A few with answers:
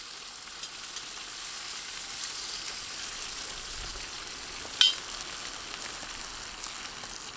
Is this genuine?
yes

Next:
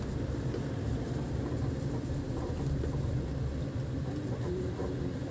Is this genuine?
yes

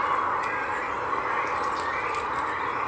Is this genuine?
yes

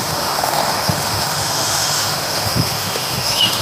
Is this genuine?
no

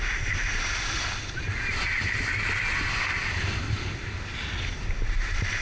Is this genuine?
yes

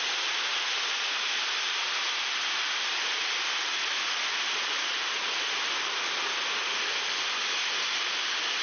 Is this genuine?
yes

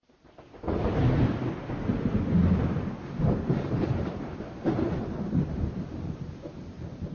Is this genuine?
no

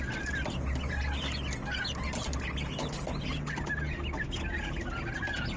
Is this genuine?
yes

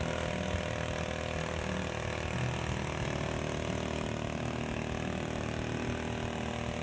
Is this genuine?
yes